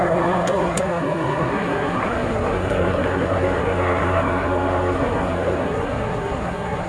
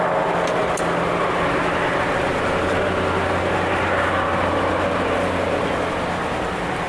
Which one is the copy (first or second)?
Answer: first